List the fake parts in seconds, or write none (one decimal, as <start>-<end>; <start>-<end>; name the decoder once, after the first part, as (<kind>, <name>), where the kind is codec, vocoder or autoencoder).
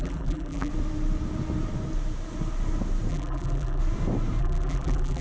0.0-0.7 (vocoder, BigVGAN v2); 3.1-3.8; 4.4-5.2